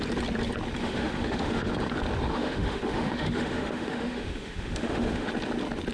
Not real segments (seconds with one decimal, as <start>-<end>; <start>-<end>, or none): 0.8-1.7; 2.3-5.3